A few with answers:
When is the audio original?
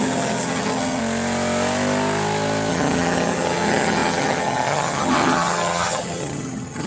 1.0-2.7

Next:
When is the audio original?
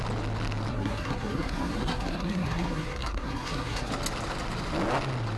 0.0-0.7; 3.9-5.4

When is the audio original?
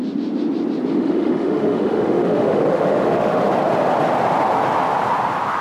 0.0-0.9; 3.5-5.6